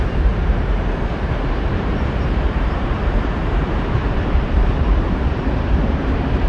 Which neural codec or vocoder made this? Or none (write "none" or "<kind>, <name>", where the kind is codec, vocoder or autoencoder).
vocoder, BigVGAN v2